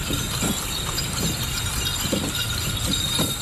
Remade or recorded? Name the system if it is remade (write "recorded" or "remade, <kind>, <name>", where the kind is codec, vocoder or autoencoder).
recorded